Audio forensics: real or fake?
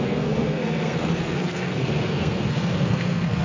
fake